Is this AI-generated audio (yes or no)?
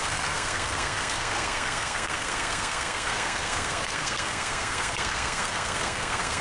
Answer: yes